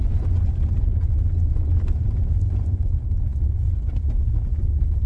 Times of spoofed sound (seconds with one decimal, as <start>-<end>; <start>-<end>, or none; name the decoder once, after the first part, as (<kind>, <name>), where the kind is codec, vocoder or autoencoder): 2.3-2.8 (vocoder, Vocos)